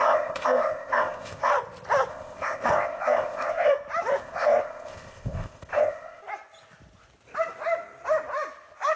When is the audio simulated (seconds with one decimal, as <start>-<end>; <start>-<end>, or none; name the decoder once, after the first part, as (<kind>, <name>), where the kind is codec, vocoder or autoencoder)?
0.0-1.5 (codec, ZipCodec); 2.1-3.7; 4.2-6.2